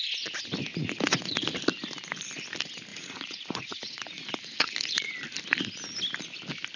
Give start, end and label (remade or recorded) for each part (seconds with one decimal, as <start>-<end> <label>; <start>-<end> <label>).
0.0-0.7 recorded; 0.7-1.4 remade; 1.4-2.9 recorded; 2.9-5.1 remade; 5.1-6.8 recorded

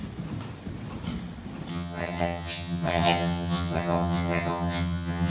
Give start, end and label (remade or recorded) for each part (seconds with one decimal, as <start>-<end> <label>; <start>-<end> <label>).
0.0-1.7 recorded; 1.7-5.3 remade

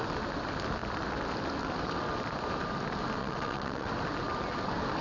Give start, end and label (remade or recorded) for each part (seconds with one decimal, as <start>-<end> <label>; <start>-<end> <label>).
0.0-3.2 recorded; 3.2-3.9 remade; 3.9-5.0 recorded

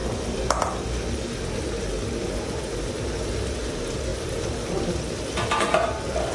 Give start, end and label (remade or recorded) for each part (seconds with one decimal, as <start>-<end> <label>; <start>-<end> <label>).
0.0-6.3 recorded

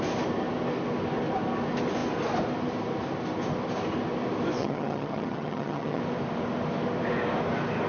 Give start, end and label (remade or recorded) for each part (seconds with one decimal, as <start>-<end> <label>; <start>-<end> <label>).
0.0-4.6 recorded; 4.6-6.0 remade; 6.0-7.9 recorded

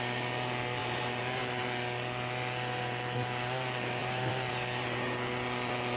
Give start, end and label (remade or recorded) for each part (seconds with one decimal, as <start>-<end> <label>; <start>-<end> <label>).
0.0-0.8 recorded; 0.8-1.6 remade; 1.6-4.0 recorded; 4.0-4.5 remade; 4.5-6.0 recorded